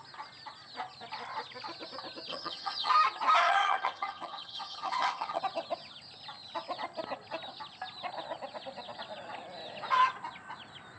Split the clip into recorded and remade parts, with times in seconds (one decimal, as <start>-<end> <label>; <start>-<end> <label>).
0.0-2.3 recorded; 2.3-2.9 remade; 2.9-3.4 recorded; 3.4-5.4 remade; 5.4-11.0 recorded